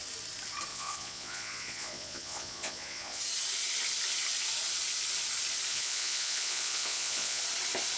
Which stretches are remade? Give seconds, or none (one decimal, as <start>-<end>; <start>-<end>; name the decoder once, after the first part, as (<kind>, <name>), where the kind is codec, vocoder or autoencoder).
0.7-3.2 (vocoder, Vocos); 5.7-7.4